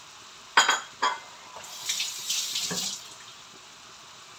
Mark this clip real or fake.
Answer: real